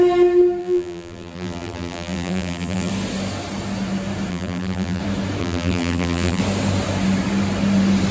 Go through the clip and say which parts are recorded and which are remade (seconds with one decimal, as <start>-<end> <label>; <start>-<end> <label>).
0.0-0.6 recorded; 0.6-2.9 remade; 2.9-4.3 recorded; 4.3-5.0 remade; 5.0-5.4 recorded; 5.4-6.4 remade; 6.4-8.1 recorded